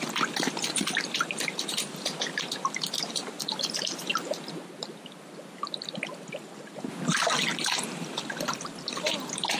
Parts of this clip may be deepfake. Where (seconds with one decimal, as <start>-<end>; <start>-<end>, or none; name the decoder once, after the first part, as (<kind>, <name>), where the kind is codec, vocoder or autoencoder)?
7.5-8.1 (vocoder, BigVGAN v2)